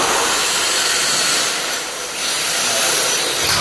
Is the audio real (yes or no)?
yes